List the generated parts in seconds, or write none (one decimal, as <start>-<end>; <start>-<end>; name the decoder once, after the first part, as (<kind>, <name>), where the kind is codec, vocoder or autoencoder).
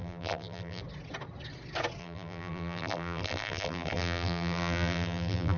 0.0-0.8 (vocoder, BigVGAN v2); 2.0-5.6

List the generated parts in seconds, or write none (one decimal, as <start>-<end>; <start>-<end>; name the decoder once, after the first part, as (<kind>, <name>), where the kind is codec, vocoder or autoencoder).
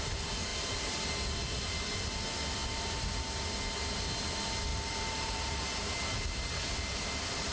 0.5-1.1 (vocoder, BigVGAN v2); 2.6-3.2; 4.7-5.6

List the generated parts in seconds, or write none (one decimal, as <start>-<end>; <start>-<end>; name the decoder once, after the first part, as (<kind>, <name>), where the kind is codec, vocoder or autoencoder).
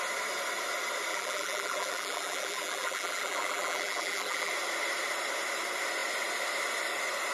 1.1-4.5 (vocoder, BigVGAN v2)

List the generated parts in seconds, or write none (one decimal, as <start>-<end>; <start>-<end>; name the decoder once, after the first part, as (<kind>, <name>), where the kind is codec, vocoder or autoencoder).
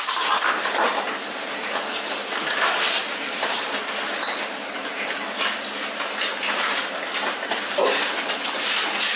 6.3-6.8 (vocoder, BigVGAN v2)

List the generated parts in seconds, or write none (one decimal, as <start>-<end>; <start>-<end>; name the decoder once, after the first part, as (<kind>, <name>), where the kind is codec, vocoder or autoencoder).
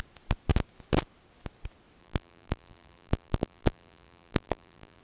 2.0-5.0 (vocoder, BigVGAN v2)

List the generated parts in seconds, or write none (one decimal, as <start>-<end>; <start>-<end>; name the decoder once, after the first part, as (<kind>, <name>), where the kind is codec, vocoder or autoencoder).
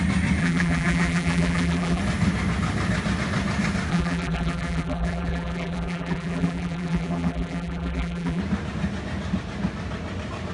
0.4-2.0 (vocoder, BigVGAN v2); 3.9-8.4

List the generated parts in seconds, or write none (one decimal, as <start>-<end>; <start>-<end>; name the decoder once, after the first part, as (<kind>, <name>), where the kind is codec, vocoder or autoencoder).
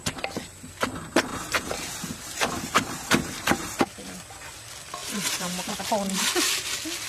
1.3-3.8 (vocoder, BigVGAN v2); 5.0-5.8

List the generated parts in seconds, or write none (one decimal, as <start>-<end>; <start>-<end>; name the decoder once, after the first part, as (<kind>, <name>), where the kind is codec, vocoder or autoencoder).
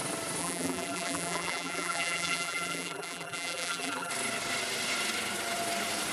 0.4-4.1 (vocoder, BigVGAN v2)